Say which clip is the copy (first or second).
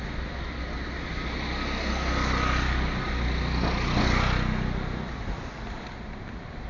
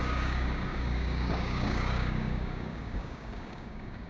second